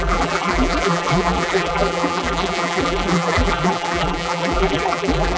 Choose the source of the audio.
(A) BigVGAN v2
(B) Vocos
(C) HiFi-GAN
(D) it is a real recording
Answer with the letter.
A